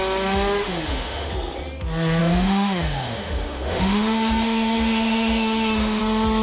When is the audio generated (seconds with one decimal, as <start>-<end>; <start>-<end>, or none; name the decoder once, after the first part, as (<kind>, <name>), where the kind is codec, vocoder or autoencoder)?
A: 0.6-1.3 (autoencoder, DAC-VAE); 2.2-6.0